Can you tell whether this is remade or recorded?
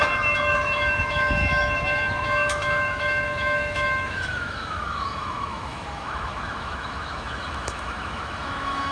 remade